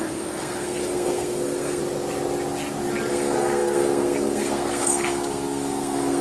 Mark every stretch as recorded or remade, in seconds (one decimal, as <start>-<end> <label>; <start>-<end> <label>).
0.0-1.8 remade; 1.8-3.1 recorded; 3.1-6.2 remade